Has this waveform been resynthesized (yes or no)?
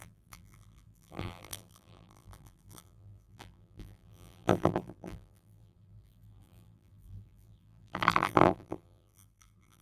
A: yes